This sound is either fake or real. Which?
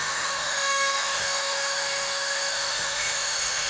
fake